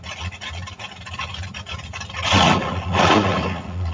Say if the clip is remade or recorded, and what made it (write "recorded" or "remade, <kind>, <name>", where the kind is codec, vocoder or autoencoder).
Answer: remade, vocoder, Vocos